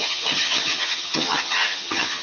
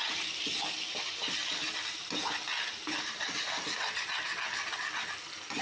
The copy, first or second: first